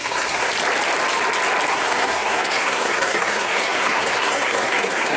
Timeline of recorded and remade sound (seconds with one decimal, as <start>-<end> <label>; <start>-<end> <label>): 0.0-0.5 remade; 0.5-1.7 recorded; 1.7-5.2 remade